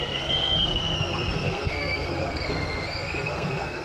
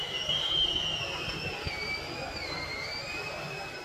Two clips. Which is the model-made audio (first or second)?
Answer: first